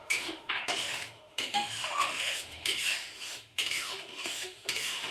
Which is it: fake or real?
fake